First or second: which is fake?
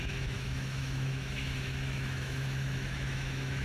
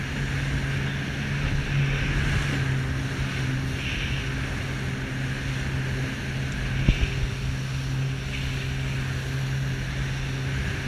first